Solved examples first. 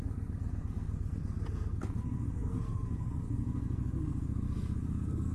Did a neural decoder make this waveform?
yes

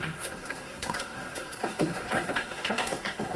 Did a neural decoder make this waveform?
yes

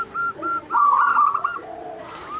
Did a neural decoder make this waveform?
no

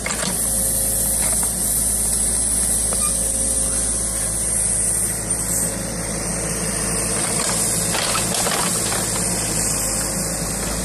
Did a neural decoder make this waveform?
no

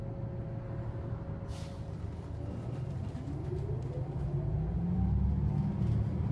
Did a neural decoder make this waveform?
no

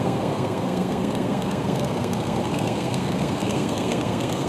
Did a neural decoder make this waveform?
yes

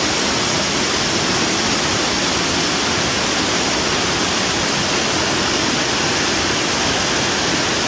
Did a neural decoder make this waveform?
no